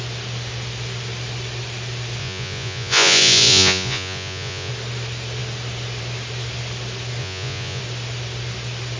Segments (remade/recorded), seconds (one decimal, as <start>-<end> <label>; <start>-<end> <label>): 0.0-2.2 recorded; 2.2-4.7 remade; 4.7-7.2 recorded; 7.2-7.8 remade; 7.8-9.0 recorded